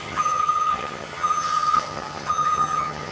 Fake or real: fake